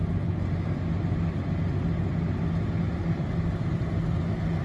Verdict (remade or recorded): recorded